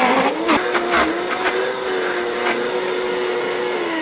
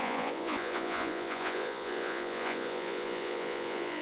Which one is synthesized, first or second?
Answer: second